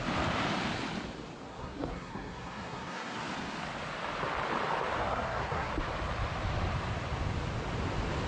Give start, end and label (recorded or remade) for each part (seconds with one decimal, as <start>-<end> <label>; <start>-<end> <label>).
0.0-1.5 recorded; 1.5-3.2 remade; 3.2-5.0 recorded; 5.0-5.7 remade; 5.7-8.3 recorded